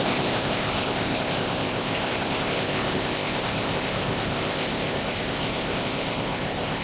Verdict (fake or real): fake